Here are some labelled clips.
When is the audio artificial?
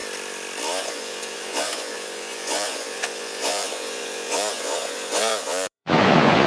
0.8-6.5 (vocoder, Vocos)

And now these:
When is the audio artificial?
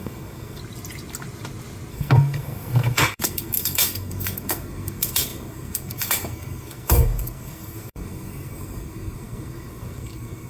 0.0-0.6 (codec, SNAC); 1.9-10.5